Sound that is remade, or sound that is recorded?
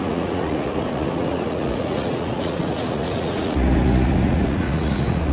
remade